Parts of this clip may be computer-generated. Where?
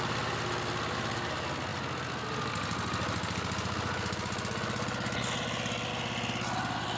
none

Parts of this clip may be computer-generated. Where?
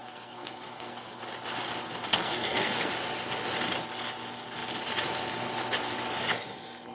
0.0-1.2 (codec, SNAC); 2.1-2.9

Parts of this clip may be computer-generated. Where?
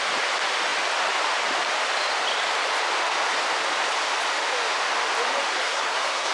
5.6-6.3 (codec, SNAC)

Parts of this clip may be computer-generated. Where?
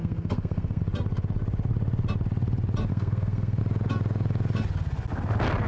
0.0-0.8 (codec, SNAC); 2.9-3.6